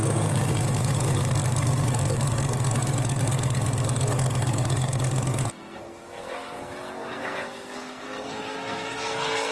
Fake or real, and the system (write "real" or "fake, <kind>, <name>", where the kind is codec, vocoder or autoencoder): fake, codec, SNAC